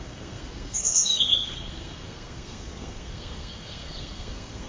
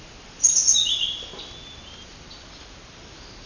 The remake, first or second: first